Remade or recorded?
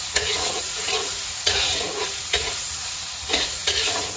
remade